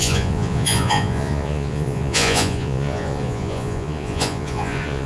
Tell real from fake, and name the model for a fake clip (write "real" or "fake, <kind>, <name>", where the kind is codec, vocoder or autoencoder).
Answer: fake, vocoder, Vocos